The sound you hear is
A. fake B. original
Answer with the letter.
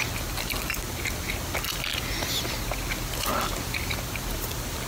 B